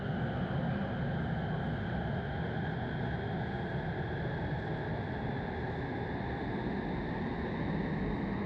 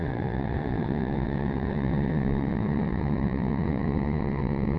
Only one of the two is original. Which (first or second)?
first